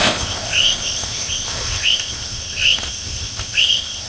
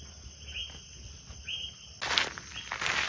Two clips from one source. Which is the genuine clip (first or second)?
second